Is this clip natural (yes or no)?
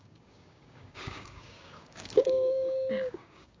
no